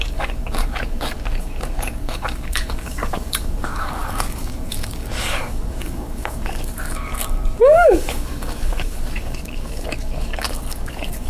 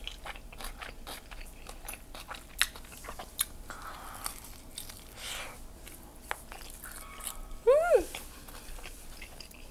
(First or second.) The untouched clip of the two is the second